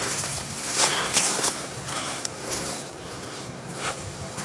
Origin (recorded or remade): remade